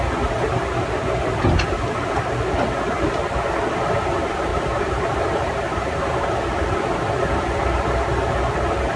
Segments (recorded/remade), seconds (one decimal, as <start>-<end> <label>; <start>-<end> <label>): 0.0-4.5 recorded; 4.5-7.0 remade; 7.0-9.0 recorded